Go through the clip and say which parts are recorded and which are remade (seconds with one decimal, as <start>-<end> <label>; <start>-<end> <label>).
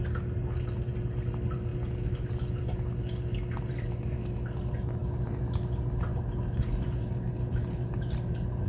0.0-8.7 recorded